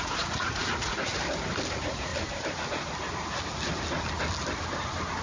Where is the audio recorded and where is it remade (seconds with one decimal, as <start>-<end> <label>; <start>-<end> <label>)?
0.0-1.1 remade; 1.1-1.7 recorded; 1.7-2.1 remade; 2.1-5.2 recorded